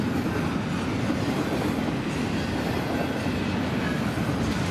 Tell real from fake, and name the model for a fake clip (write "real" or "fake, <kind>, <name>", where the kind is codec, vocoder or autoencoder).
real